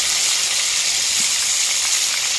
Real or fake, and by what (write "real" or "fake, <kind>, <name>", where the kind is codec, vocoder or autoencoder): real